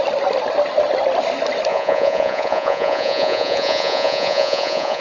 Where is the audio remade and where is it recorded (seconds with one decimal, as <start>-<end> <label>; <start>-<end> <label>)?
0.0-1.7 recorded; 1.7-5.0 remade